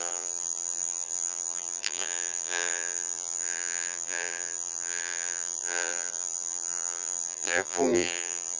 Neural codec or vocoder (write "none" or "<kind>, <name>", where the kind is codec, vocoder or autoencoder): vocoder, BigVGAN v2